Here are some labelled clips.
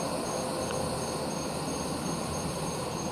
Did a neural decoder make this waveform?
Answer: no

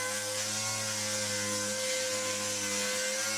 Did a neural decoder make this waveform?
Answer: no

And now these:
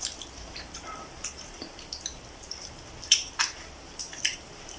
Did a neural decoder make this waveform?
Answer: yes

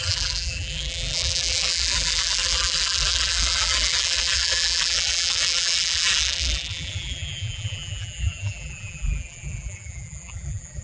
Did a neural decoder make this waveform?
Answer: yes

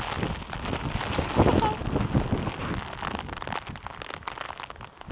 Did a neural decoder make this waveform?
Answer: no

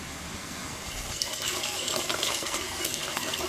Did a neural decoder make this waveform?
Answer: yes